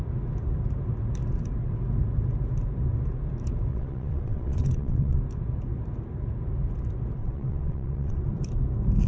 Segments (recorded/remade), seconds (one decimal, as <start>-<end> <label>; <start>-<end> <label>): 0.0-3.7 recorded; 3.7-5.2 remade; 5.2-7.2 recorded; 7.2-8.2 remade; 8.2-9.1 recorded